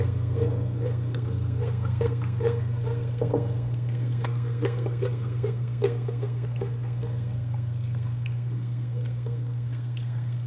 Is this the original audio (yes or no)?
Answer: no